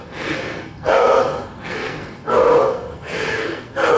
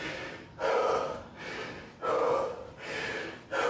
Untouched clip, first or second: second